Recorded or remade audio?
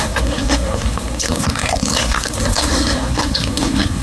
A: remade